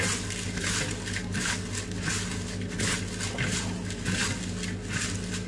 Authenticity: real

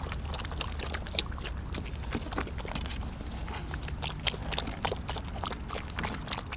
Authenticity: real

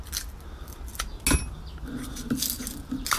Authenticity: real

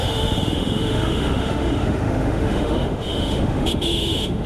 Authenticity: fake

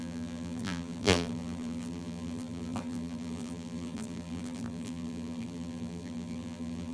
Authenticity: fake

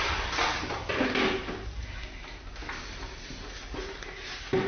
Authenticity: real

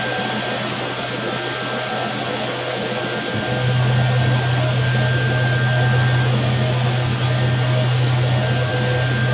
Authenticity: real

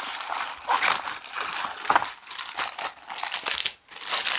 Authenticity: real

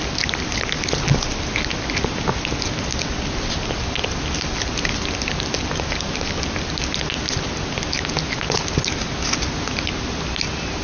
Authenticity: real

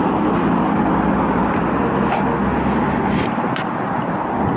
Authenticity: real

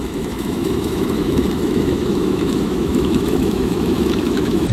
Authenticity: fake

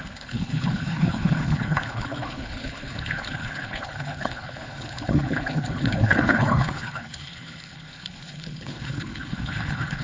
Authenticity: fake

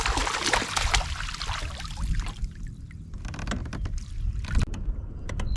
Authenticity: real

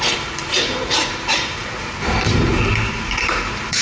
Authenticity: fake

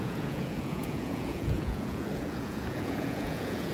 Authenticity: fake